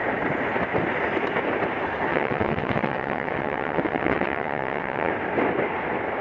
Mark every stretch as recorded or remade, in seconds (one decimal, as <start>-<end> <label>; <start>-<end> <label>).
0.0-2.1 recorded; 2.1-5.1 remade; 5.1-6.2 recorded